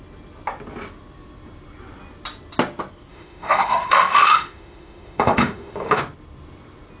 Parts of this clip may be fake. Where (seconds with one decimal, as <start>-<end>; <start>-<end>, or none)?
3.1-6.0